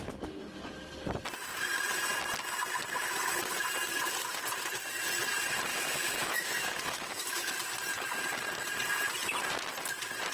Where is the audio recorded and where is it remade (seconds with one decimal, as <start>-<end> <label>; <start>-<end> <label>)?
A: 0.0-5.7 recorded; 5.7-7.5 remade; 7.5-10.3 recorded